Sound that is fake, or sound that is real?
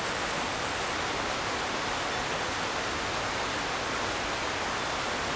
real